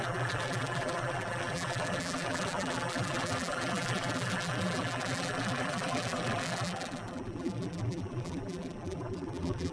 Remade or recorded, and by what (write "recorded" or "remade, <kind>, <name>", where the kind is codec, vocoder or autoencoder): remade, vocoder, BigVGAN v2